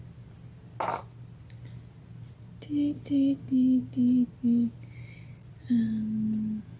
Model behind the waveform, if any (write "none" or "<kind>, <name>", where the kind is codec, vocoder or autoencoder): none